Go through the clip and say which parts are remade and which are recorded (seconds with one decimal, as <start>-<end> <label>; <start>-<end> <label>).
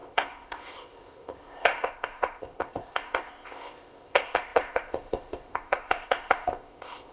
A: 0.0-7.1 remade